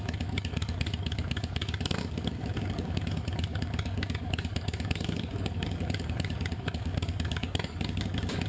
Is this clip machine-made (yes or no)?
yes